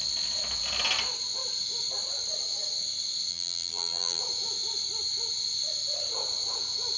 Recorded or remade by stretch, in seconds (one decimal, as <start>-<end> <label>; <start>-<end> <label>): 0.0-3.3 recorded; 3.3-4.2 remade; 4.2-7.0 recorded